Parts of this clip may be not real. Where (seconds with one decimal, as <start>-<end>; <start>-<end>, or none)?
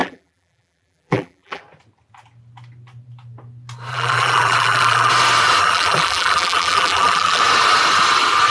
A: 0.0-1.6; 3.9-5.1; 5.6-7.4